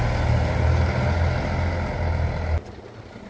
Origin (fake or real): real